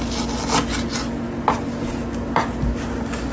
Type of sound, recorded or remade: recorded